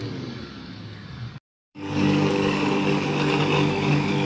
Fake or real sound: fake